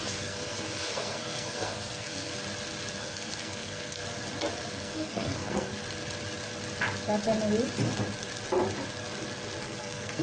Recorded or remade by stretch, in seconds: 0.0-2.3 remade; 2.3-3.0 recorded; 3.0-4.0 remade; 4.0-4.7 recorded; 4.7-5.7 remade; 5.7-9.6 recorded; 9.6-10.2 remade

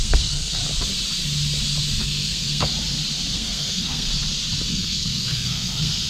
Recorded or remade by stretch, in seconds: 0.0-0.6 remade; 0.6-2.0 recorded; 2.0-2.7 remade; 2.7-3.3 recorded; 3.3-4.1 remade; 4.1-4.7 recorded; 4.7-6.1 remade